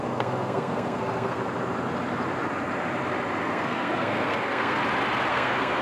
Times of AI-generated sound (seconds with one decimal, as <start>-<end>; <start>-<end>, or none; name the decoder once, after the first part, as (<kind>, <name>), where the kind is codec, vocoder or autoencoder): 0.0-1.4 (codec, SNAC); 3.4-4.8; 5.3-5.8